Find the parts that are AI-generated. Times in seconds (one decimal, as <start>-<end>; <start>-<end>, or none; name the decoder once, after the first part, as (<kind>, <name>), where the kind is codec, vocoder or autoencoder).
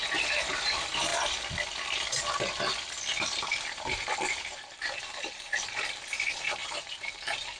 0.0-1.1 (vocoder, BigVGAN v2); 3.4-7.6